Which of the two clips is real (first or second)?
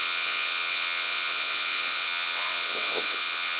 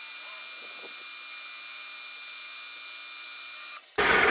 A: second